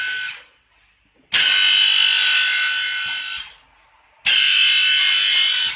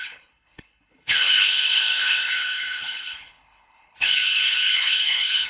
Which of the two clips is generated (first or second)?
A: second